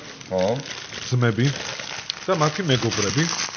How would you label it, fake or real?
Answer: real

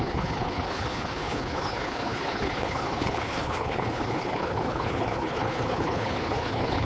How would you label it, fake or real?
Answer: fake